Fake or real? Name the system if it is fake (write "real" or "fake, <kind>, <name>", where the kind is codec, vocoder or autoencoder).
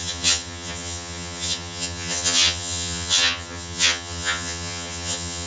fake, vocoder, HiFi-GAN